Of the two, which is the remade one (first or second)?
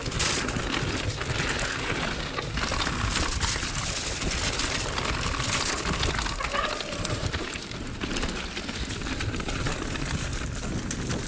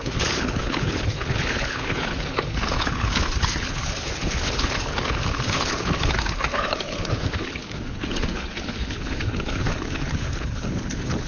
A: second